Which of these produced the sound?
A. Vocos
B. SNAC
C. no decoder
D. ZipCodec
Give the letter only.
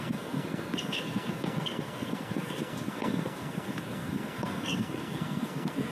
B